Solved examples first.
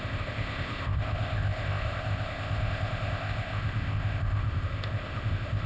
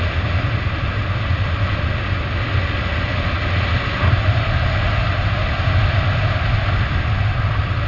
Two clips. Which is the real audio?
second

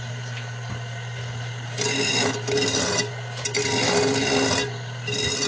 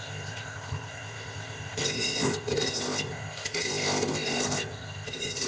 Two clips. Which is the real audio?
first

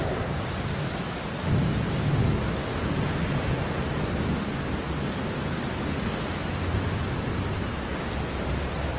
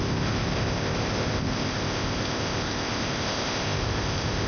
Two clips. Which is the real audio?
first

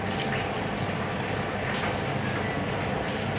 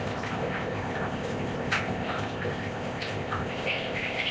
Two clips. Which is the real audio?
first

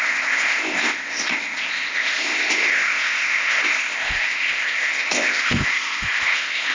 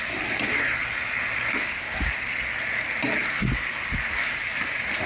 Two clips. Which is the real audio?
second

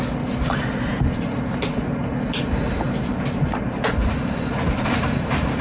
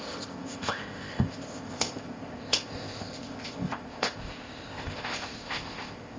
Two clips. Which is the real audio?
first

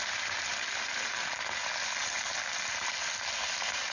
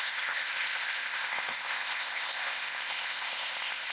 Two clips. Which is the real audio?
first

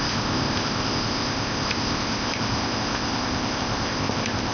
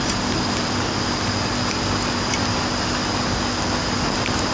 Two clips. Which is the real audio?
second